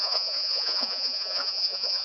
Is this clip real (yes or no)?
no